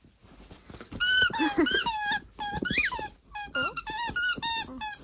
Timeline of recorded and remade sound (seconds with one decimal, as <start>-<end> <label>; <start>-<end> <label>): 0.0-5.0 recorded